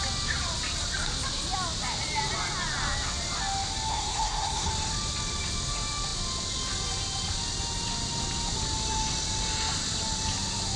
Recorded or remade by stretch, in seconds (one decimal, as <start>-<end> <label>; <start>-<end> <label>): 0.0-3.9 recorded; 3.9-4.7 remade; 4.7-10.8 recorded